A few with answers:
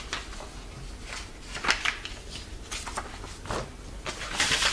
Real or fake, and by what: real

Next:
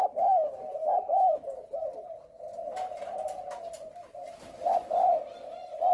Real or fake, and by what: fake, vocoder, BigVGAN v2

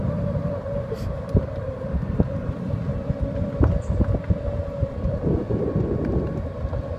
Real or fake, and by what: fake, vocoder, BigVGAN v2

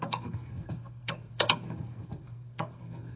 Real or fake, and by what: fake, codec, SNAC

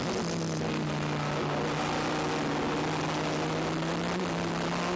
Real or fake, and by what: real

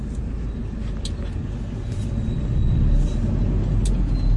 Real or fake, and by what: real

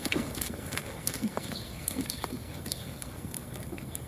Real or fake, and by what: fake, codec, SNAC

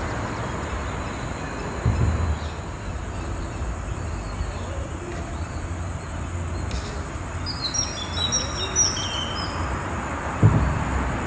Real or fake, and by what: real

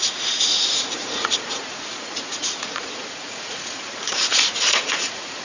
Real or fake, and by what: fake, vocoder, Vocos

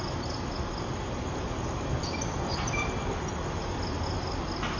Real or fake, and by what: real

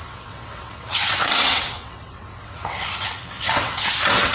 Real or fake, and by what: fake, vocoder, WaveNeXt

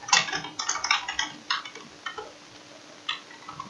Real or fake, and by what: real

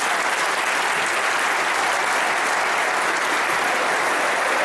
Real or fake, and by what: real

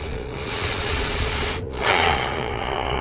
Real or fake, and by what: fake, vocoder, Vocos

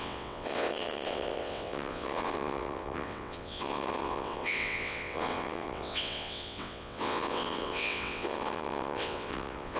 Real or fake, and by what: fake, vocoder, WaveNeXt